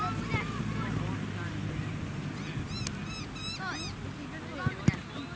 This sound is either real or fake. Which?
real